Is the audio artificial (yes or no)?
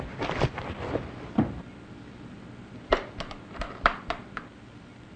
yes